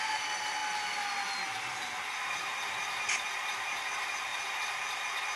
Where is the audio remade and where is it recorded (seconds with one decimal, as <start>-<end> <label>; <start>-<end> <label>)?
0.0-4.3 recorded; 4.3-5.0 remade; 5.0-5.4 recorded